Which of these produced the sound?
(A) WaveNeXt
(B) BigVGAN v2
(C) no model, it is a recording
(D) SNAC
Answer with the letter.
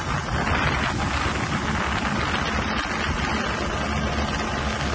C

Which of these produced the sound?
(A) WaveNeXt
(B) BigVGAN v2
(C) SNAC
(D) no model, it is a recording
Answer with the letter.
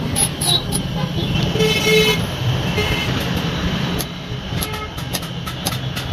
D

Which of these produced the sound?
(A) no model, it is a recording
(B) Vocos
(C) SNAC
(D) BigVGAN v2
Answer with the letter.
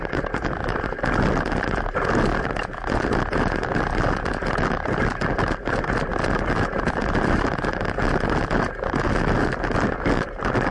A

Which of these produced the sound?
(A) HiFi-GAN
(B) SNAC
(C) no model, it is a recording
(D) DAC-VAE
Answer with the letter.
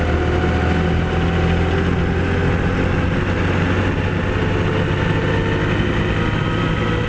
C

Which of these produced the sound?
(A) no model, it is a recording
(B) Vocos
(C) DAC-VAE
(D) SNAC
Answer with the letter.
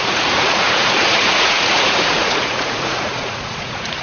B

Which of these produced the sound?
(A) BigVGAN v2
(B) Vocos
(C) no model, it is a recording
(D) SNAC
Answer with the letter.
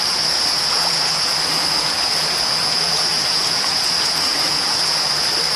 B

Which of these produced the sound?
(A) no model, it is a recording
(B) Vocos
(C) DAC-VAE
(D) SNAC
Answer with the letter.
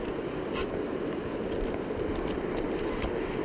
A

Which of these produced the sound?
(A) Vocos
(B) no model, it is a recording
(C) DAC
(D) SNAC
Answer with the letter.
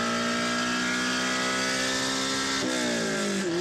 B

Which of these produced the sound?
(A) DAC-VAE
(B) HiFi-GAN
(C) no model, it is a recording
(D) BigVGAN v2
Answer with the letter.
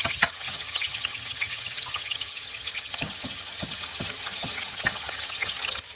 B